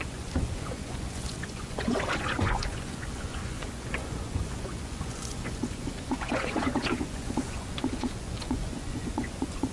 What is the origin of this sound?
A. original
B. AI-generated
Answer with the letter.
B